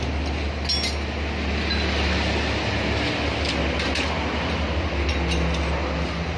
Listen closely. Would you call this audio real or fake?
real